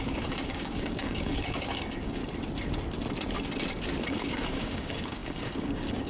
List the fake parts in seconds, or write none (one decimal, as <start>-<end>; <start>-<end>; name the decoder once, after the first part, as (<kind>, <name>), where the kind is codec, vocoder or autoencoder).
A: 0.0-2.2 (codec, DAC); 4.1-6.1